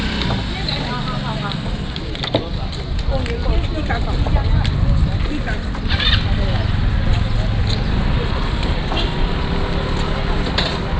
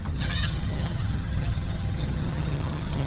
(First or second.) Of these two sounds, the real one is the first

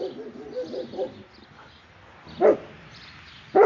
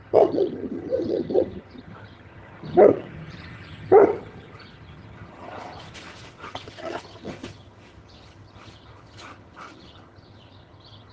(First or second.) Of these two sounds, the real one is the first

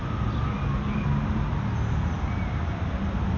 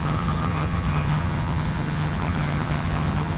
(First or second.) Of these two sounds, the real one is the first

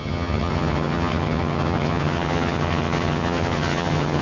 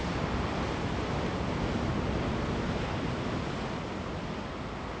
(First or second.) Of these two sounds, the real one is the second